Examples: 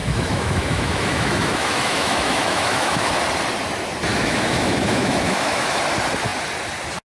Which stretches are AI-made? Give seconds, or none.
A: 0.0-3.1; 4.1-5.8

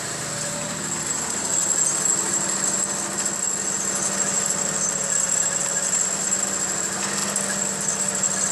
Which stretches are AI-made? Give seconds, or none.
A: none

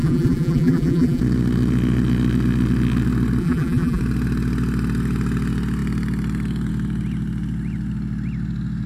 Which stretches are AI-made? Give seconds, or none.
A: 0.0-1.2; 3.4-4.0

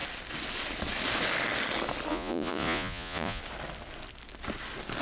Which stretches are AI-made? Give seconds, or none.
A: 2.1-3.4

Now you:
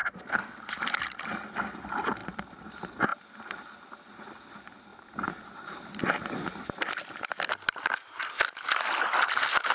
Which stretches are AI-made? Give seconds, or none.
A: 0.0-0.7

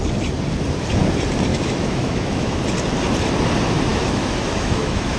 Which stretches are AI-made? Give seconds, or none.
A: 1.5-2.6; 3.9-5.2